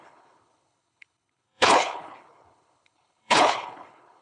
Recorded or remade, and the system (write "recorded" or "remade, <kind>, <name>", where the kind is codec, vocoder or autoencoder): remade, codec, HILCodec